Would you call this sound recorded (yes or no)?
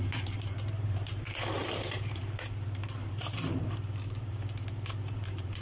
no